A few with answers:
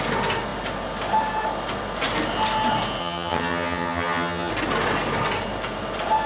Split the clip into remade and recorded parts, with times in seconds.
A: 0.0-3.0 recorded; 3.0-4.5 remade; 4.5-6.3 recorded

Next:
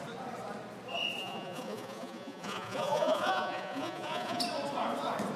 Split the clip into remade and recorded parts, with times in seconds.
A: 0.0-1.2 recorded; 1.2-4.4 remade; 4.4-5.4 recorded

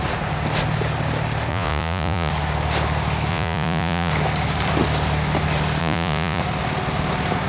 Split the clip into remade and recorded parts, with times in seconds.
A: 0.0-1.5 recorded; 1.5-2.3 remade; 2.3-3.3 recorded; 3.3-4.1 remade; 4.1-5.8 recorded; 5.8-6.4 remade; 6.4-7.5 recorded

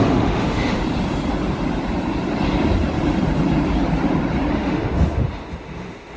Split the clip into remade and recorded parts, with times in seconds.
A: 0.0-0.8 remade; 0.8-4.5 recorded; 4.5-6.2 remade

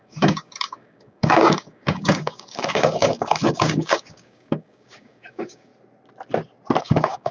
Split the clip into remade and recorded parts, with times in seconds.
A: 0.0-5.7 remade; 5.7-6.8 recorded; 6.8-7.3 remade

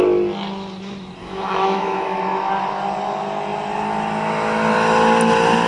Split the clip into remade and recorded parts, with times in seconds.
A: 0.0-1.2 recorded; 1.2-2.2 remade; 2.2-5.7 recorded

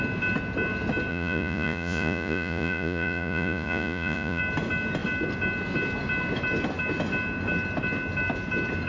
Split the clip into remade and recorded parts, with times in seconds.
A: 0.0-1.1 recorded; 1.1-4.4 remade; 4.4-8.9 recorded

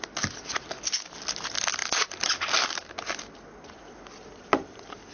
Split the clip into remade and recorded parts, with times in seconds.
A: 0.0-5.1 recorded